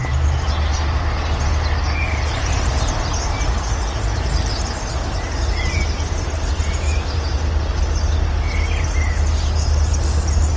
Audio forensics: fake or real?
real